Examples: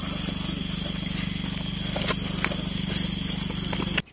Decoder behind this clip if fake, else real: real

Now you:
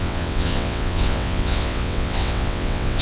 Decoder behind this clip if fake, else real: fake, vocoder, WaveNeXt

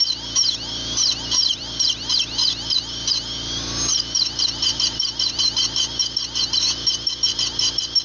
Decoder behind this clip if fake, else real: fake, vocoder, BigVGAN v2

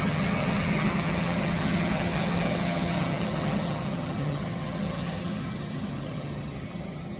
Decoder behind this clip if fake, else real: fake, vocoder, HiFi-GAN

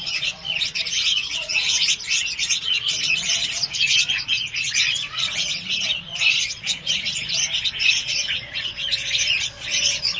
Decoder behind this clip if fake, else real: fake, vocoder, Vocos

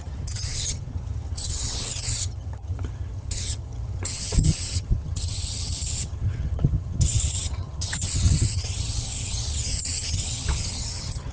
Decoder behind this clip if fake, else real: fake, vocoder, HiFi-GAN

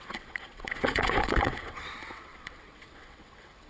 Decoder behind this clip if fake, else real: fake, vocoder, WaveNeXt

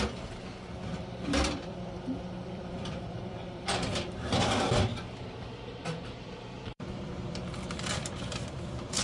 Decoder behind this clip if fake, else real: fake, vocoder, BigVGAN v2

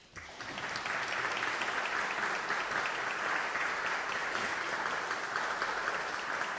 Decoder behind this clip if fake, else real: real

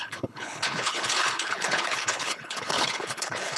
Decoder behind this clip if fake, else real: fake, codec, HILCodec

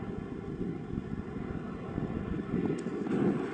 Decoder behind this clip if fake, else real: real